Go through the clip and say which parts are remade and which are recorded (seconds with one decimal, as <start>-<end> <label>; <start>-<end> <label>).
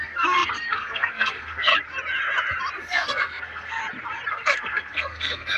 0.0-1.7 remade; 1.7-2.8 recorded; 2.8-3.8 remade; 3.8-4.3 recorded; 4.3-5.6 remade